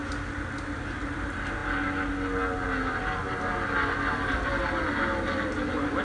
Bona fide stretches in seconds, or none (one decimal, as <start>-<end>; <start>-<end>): 0.0-6.0